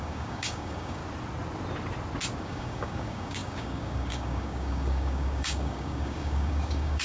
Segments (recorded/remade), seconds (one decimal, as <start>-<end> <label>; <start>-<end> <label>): 0.0-1.0 remade; 1.0-2.4 recorded; 2.4-7.0 remade